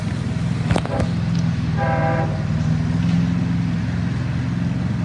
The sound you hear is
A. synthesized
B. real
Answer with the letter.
B